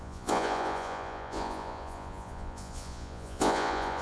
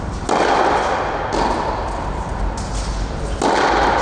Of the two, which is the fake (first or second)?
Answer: first